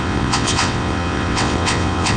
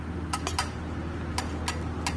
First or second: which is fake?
first